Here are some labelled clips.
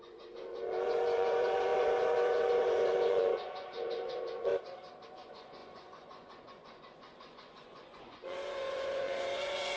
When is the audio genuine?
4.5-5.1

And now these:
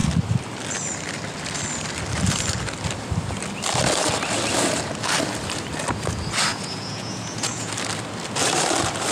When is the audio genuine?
0.0-6.5; 7.7-9.1

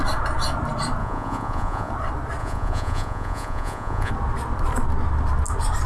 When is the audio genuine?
0.0-1.0; 1.9-2.4; 4.1-5.9

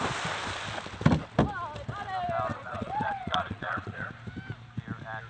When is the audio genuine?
0.0-2.5; 4.1-5.3

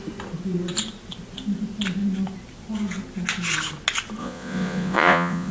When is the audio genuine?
0.0-4.2

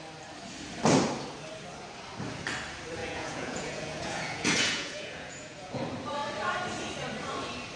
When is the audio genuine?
0.0-3.0; 5.8-7.8

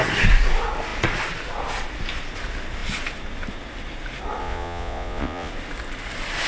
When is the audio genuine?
0.0-4.4; 5.5-6.5

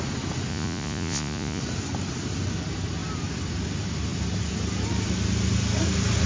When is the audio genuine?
0.0-0.5; 1.6-6.3